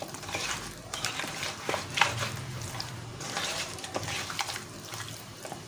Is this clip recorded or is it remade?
remade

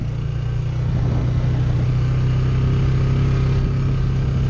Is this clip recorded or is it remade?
recorded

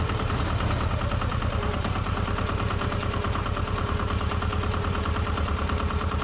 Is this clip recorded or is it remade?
remade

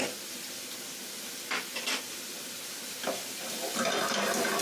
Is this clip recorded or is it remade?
remade